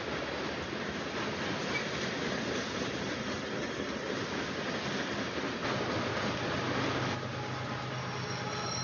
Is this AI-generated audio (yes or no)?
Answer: no